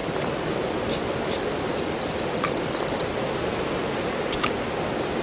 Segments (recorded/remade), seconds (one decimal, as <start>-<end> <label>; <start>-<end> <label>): 0.0-5.2 recorded